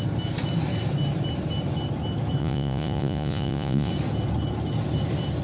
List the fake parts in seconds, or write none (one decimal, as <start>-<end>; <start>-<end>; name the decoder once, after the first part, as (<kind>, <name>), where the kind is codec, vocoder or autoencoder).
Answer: 2.4-3.9 (vocoder, Vocos)